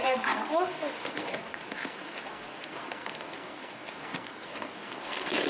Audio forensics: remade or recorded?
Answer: remade